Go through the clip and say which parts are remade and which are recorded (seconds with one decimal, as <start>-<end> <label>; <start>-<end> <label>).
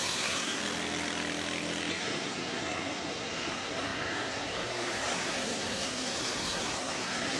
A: 0.0-0.6 remade; 0.6-1.9 recorded; 1.9-7.4 remade